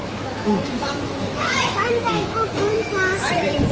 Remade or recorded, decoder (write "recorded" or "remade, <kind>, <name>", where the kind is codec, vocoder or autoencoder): remade, autoencoder, DAC-VAE